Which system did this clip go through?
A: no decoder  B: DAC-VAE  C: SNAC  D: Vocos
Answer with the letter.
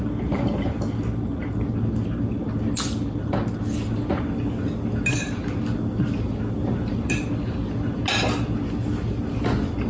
A